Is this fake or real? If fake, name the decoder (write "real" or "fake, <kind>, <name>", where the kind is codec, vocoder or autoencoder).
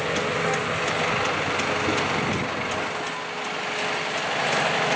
real